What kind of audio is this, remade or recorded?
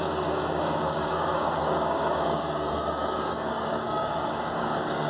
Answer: remade